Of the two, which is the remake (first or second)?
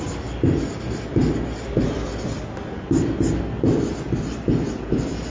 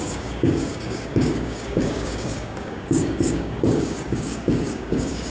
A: second